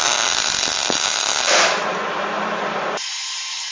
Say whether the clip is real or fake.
real